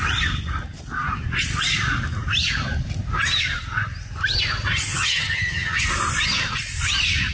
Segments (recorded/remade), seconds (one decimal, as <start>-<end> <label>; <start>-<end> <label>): 0.0-4.9 recorded; 4.9-5.8 remade; 5.8-7.3 recorded